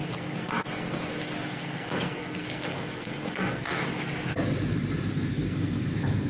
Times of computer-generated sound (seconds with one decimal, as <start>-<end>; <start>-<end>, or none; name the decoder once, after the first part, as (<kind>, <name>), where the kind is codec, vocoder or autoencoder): 0.0-3.8 (codec, SNAC); 5.3-6.3